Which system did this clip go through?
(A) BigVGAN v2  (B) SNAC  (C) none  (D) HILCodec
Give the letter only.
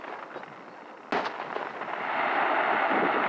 C